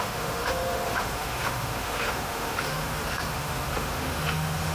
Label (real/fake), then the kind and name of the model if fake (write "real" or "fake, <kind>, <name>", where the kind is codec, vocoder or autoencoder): fake, autoencoder, DAC-VAE